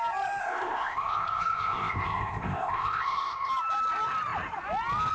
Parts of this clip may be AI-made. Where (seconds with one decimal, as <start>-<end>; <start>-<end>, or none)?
0.4-3.5